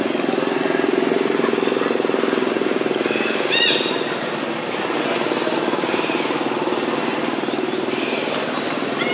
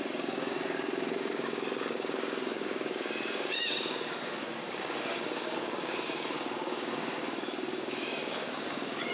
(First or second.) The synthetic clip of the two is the second